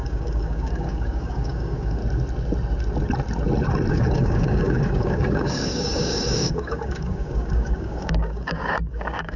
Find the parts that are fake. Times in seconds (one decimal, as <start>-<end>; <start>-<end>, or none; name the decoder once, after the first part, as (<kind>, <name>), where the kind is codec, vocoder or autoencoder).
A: 0.0-2.0 (codec, DAC); 3.9-9.4